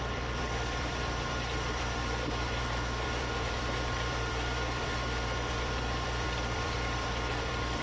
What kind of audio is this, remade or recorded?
remade